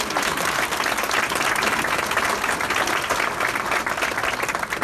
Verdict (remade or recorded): recorded